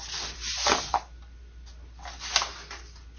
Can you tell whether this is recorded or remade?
recorded